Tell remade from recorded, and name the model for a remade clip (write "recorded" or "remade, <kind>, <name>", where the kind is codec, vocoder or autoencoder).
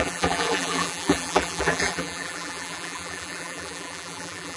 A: remade, vocoder, BigVGAN v2